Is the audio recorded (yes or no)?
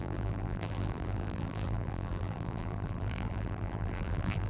no